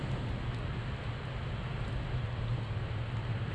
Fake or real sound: real